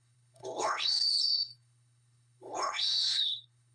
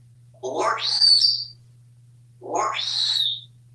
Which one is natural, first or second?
second